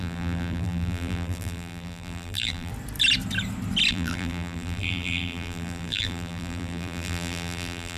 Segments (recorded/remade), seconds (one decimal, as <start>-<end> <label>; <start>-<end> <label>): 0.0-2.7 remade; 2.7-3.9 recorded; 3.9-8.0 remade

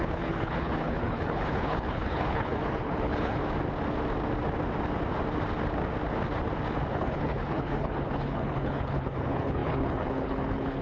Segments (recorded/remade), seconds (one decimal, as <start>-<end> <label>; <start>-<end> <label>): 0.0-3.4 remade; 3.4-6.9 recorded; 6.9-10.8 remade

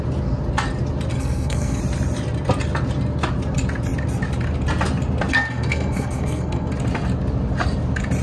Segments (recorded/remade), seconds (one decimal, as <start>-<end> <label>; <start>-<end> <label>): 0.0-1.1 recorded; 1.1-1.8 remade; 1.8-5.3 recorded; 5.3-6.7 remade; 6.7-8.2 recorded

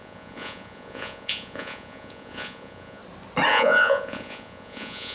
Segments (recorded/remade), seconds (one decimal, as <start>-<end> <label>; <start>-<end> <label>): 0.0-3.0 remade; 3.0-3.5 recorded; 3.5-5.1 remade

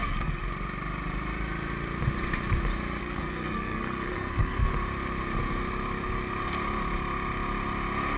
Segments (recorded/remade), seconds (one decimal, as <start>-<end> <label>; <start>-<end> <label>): 0.0-0.4 remade; 0.4-3.0 recorded; 3.0-4.7 remade; 4.7-8.2 recorded